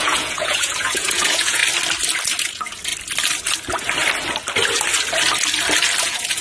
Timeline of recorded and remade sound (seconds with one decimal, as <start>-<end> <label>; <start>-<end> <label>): 0.0-1.6 remade; 1.6-2.5 recorded; 2.5-2.9 remade; 2.9-6.0 recorded; 6.0-6.4 remade